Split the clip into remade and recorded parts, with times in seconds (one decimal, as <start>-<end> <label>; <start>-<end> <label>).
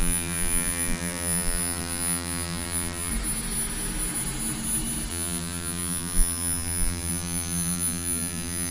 0.0-3.1 remade; 3.1-5.1 recorded; 5.1-8.7 remade